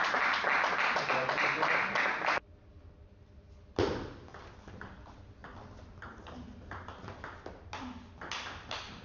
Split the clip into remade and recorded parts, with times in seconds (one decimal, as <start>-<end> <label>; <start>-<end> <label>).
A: 0.0-9.0 recorded